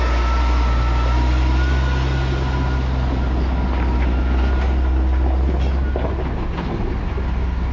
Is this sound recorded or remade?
recorded